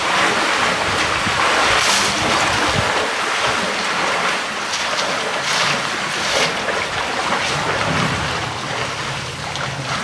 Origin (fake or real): real